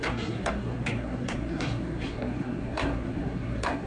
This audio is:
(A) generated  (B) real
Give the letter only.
A